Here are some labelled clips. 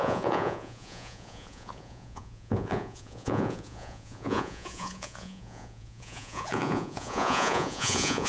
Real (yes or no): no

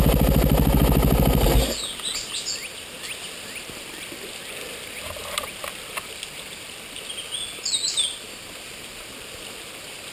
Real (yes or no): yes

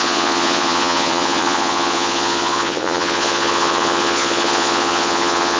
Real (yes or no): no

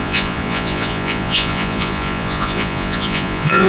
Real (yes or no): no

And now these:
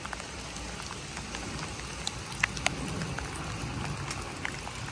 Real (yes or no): yes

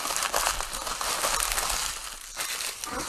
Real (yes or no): yes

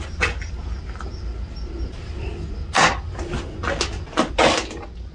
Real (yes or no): yes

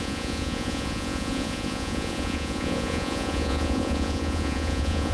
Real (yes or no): no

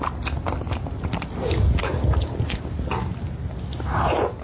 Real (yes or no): yes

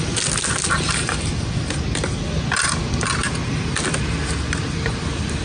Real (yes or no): yes